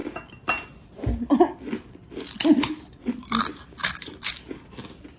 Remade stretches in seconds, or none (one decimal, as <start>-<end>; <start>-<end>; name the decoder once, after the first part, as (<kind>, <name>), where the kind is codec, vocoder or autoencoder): 3.7-4.3 (autoencoder, DAC-VAE)